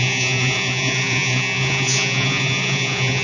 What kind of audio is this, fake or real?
fake